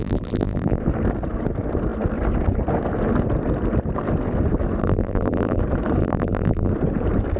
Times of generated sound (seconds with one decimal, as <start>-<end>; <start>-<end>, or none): 0.0-0.8; 4.8-5.6; 6.0-6.7